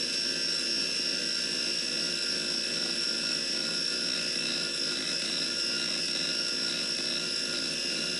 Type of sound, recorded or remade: recorded